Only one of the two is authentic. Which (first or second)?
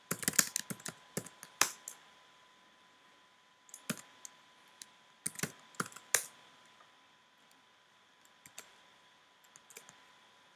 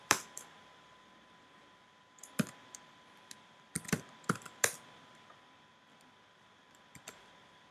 first